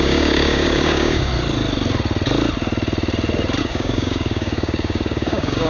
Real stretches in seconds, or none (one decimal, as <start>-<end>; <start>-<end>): 1.3-3.6